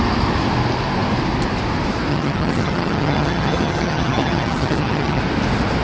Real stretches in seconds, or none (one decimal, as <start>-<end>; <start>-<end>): 0.0-2.1; 5.2-5.8